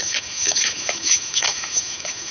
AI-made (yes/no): yes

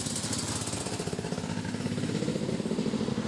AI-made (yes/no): no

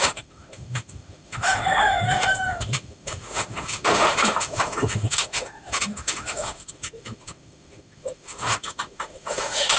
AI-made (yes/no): yes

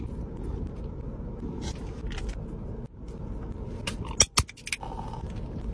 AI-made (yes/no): no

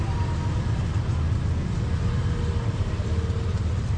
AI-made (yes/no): no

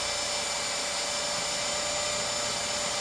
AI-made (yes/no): no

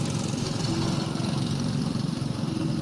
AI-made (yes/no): no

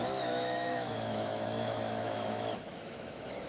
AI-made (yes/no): yes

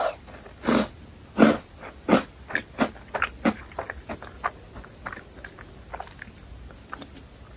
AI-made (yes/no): no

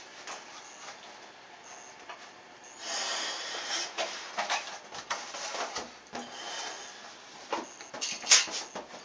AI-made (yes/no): no